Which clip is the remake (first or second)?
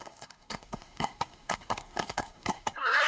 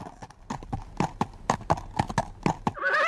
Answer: first